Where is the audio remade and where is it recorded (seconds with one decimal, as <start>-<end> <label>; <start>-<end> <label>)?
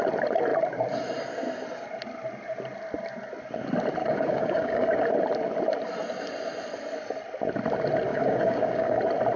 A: 0.0-4.0 recorded; 4.0-4.9 remade; 4.9-8.1 recorded; 8.1-9.0 remade; 9.0-9.4 recorded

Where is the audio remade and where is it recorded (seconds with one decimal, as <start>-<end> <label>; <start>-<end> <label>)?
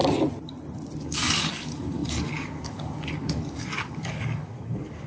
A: 0.0-1.0 recorded; 1.0-5.1 remade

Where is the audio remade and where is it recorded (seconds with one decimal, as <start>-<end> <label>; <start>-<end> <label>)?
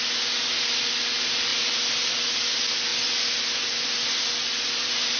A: 0.0-5.2 recorded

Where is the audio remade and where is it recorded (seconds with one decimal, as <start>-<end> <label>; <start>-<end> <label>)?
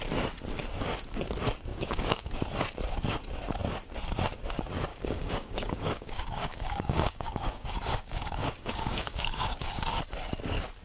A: 0.0-1.7 recorded; 1.7-2.4 remade; 2.4-4.9 recorded; 4.9-10.0 remade; 10.0-10.8 recorded